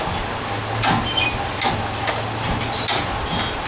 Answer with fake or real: real